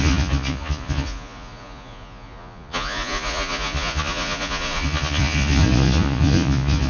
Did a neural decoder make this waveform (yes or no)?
yes